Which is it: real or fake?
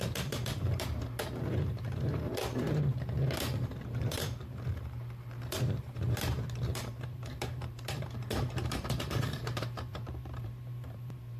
fake